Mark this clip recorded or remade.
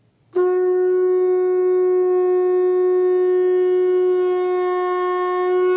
recorded